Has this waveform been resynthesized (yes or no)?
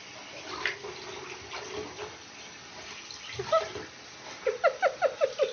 no